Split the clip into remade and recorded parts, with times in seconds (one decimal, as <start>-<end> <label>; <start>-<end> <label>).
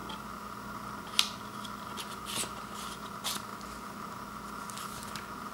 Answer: 0.0-5.5 recorded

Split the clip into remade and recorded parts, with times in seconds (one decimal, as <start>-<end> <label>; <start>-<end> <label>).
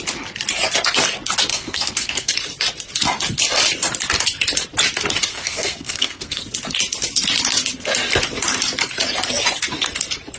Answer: 0.0-1.5 recorded; 1.5-2.3 remade; 2.3-5.3 recorded; 5.3-6.4 remade; 6.4-10.4 recorded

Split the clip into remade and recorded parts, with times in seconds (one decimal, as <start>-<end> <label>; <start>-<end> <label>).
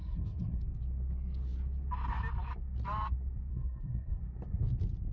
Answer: 0.0-0.6 remade; 0.6-3.5 recorded; 3.5-4.2 remade; 4.2-5.1 recorded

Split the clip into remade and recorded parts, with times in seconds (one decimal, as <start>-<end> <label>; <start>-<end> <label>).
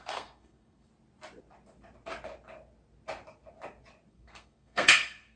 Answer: 0.0-0.9 remade; 0.9-4.1 recorded; 4.1-5.4 remade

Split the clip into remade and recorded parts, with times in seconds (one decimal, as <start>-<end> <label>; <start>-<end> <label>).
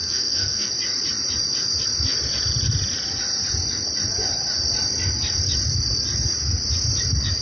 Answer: 0.0-0.7 remade; 0.7-7.4 recorded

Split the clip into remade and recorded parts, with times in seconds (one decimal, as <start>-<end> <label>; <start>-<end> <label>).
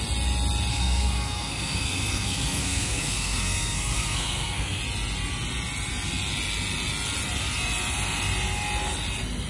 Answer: 0.0-0.7 recorded; 0.7-4.8 remade; 4.8-9.5 recorded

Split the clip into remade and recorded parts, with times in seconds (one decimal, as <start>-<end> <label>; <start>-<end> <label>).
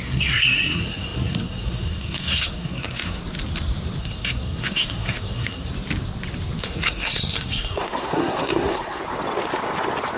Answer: 0.0-3.2 remade; 3.2-4.0 recorded; 4.0-5.7 remade; 5.7-6.6 recorded; 6.6-9.0 remade; 9.0-10.2 recorded